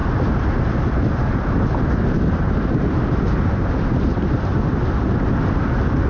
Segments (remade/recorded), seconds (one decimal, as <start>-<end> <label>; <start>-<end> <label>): 0.0-6.1 recorded